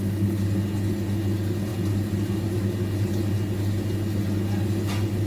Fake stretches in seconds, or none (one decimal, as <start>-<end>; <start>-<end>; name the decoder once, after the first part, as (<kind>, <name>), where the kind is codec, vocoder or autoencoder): none